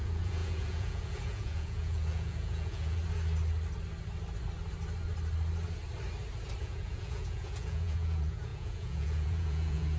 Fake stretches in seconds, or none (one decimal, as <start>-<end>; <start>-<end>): 0.0-3.0; 6.6-10.0